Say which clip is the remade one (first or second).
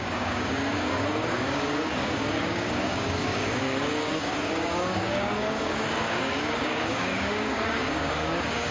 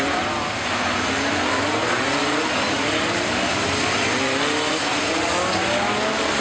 first